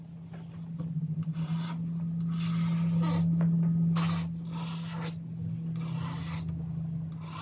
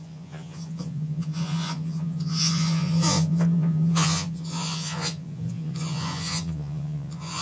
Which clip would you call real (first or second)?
first